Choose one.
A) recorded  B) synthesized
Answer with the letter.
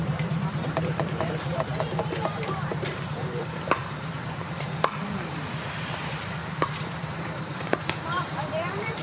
B